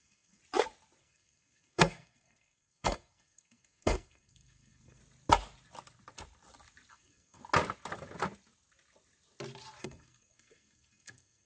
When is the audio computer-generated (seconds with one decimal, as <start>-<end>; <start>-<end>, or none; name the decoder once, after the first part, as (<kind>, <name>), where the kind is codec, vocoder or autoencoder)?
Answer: 0.0-0.4 (codec, SNAC); 1.0-5.0; 6.9-7.4; 9.8-11.5

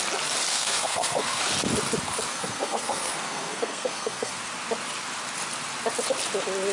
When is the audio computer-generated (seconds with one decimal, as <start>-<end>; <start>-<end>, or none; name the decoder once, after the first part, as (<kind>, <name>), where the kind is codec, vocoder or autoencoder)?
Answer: 0.5-1.4 (codec, SNAC); 2.3-4.3

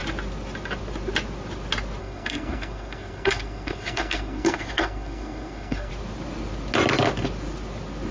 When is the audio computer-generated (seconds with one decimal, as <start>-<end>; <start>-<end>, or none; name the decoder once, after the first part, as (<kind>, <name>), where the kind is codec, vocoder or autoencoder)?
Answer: 2.0-5.9 (codec, SNAC)

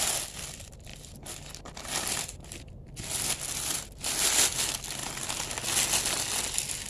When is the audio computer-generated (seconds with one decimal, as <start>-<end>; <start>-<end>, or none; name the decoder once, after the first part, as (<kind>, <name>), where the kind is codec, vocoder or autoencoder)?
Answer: none

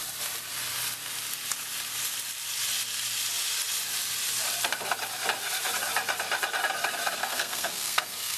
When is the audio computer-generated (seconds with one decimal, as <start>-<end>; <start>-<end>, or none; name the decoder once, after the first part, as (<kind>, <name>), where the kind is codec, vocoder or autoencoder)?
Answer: 7.2-8.4 (codec, SNAC)